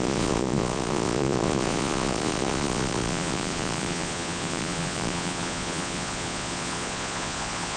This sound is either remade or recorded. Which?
remade